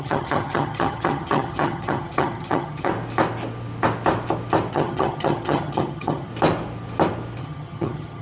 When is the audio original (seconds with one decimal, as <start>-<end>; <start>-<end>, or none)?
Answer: 2.9-4.7; 6.3-7.4